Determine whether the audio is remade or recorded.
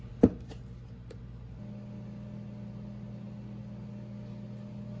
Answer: recorded